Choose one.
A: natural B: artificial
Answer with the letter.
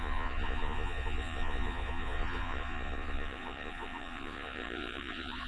B